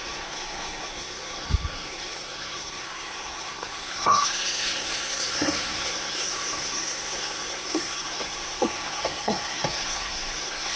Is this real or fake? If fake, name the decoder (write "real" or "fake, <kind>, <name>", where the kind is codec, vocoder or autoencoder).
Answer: fake, codec, SNAC